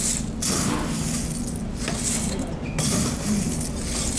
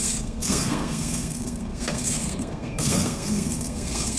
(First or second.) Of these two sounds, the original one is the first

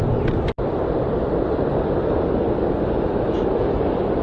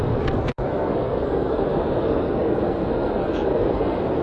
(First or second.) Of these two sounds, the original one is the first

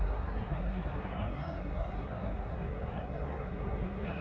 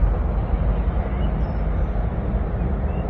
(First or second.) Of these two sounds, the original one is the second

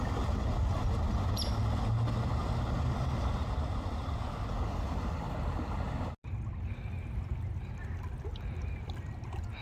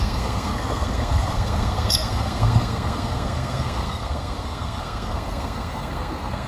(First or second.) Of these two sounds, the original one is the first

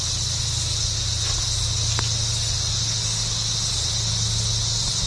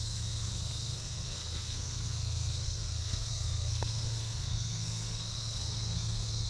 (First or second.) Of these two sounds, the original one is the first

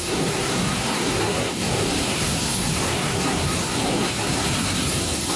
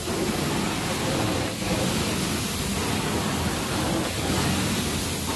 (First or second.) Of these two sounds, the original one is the second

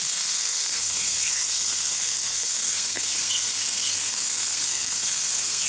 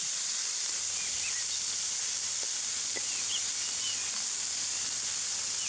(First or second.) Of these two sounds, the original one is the second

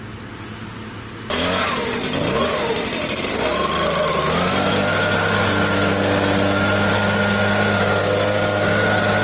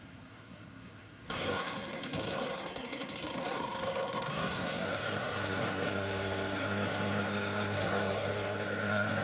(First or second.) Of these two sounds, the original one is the first